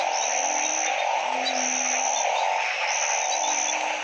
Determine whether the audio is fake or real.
real